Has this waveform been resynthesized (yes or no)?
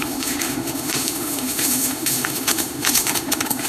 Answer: yes